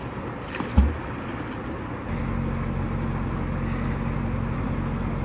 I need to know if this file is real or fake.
real